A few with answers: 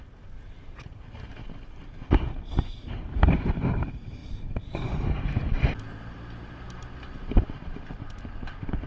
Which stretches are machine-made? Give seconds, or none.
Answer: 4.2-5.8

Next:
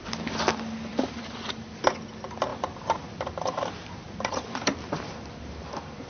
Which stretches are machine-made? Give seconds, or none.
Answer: 0.9-1.8; 2.5-6.1

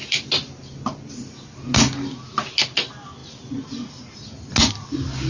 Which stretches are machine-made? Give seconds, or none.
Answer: none

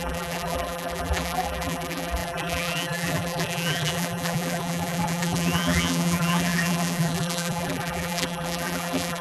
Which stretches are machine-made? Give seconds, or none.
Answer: 0.0-9.2

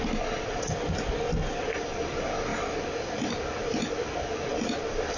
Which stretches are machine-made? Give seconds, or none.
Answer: none

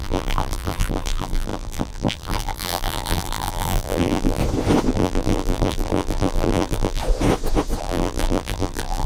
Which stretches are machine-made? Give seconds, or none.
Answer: 0.0-4.4; 4.9-7.0; 7.8-9.1